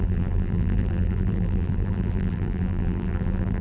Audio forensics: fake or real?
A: fake